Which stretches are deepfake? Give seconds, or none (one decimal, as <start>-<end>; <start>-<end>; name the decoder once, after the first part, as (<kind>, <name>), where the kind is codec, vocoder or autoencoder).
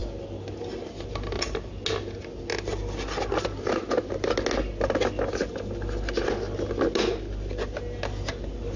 none